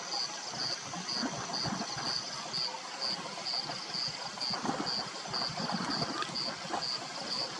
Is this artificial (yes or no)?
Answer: no